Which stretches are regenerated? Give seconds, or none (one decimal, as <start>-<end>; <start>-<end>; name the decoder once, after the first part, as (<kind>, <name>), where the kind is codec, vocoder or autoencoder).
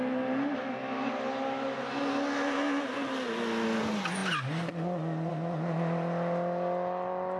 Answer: none